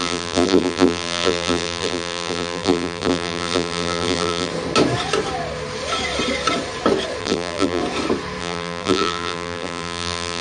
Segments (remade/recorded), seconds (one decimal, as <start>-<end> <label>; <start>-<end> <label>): 0.0-4.5 remade; 4.5-7.2 recorded; 7.2-7.8 remade; 7.8-8.4 recorded; 8.4-10.4 remade